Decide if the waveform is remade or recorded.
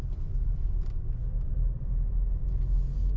recorded